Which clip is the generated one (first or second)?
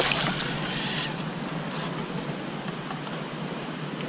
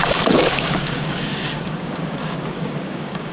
second